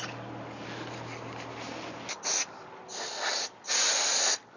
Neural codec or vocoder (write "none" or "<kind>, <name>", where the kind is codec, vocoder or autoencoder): none